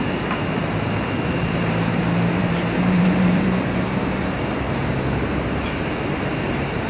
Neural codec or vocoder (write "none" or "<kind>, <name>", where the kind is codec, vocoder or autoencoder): vocoder, BigVGAN v2